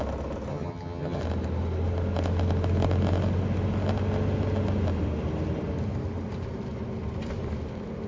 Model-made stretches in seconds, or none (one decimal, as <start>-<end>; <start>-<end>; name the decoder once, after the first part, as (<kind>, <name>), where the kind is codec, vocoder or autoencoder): 0.5-1.2 (vocoder, HiFi-GAN)